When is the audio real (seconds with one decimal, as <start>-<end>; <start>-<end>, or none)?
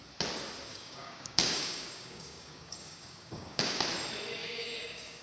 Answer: 0.0-0.7; 3.8-4.4